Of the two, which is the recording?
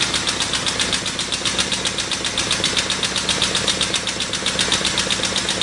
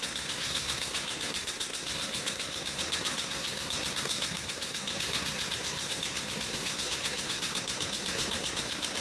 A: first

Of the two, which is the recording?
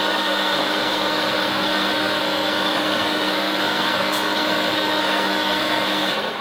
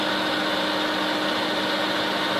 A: second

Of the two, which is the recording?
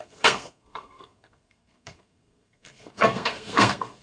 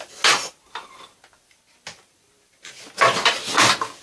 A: second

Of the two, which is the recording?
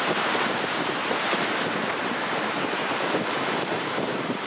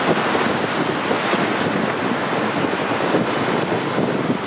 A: second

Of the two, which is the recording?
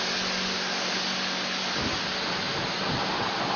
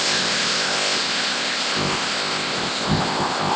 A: first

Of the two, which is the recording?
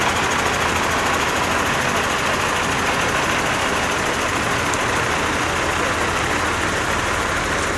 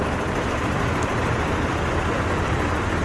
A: first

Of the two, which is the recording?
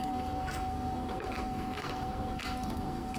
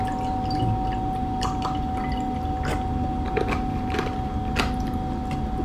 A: second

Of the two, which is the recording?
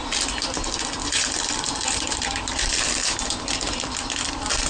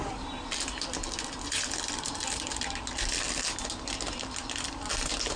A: second